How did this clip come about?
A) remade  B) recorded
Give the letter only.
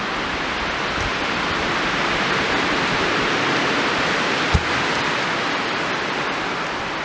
B